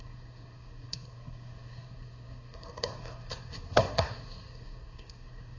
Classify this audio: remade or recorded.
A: remade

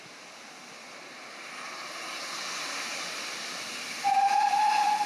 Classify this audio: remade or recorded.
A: recorded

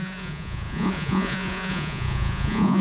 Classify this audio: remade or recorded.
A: remade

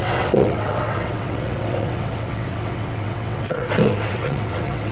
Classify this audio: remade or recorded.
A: remade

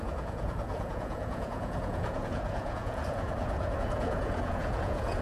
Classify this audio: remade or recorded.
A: remade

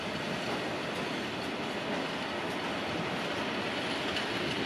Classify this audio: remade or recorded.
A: recorded